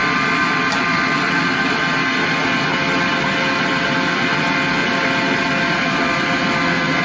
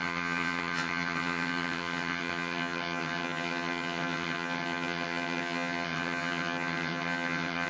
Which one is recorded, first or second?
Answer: first